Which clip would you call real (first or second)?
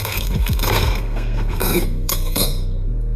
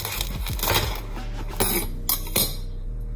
second